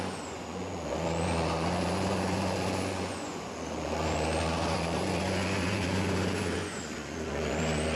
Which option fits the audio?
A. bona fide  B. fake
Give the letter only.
B